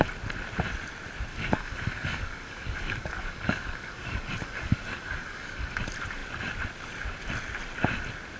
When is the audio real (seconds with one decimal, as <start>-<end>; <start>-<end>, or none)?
0.0-1.3; 5.8-8.4